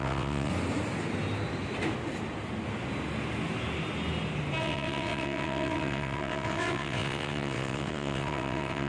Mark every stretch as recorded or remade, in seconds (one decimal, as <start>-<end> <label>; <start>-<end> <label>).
0.0-0.5 remade; 0.5-4.6 recorded; 4.6-8.9 remade

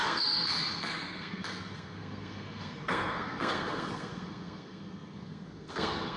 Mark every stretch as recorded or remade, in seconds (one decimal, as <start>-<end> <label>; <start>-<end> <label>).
0.0-6.2 remade

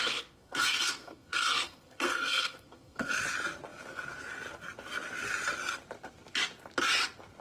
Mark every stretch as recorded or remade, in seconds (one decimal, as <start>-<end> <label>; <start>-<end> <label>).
0.0-3.1 remade; 3.1-7.4 recorded

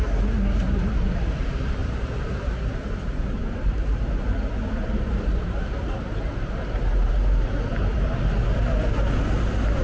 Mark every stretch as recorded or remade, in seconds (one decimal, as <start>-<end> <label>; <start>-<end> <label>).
0.0-1.8 recorded; 1.8-2.5 remade; 2.5-3.4 recorded; 3.4-8.2 remade; 8.2-9.8 recorded

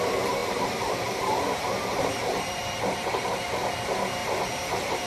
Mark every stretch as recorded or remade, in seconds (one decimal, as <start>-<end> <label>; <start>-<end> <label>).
0.0-0.4 recorded; 0.4-3.5 remade; 3.5-4.2 recorded; 4.2-5.1 remade

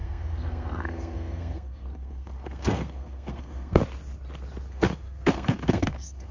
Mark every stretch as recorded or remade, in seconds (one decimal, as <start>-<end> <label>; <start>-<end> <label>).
0.0-3.8 remade; 3.8-4.7 recorded; 4.7-6.3 remade

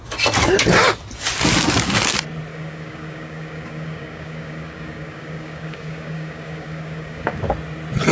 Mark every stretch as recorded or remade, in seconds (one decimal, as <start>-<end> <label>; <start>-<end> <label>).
0.0-2.5 recorded; 2.5-7.4 remade; 7.4-8.1 recorded